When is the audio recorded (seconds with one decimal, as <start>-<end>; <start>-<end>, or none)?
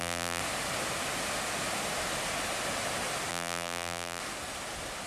0.4-3.3; 4.2-5.1